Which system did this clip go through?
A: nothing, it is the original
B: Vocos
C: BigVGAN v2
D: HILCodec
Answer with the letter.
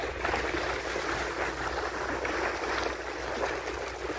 A